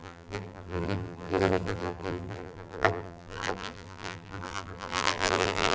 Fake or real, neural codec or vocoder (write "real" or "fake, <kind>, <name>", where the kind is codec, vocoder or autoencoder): fake, vocoder, BigVGAN v2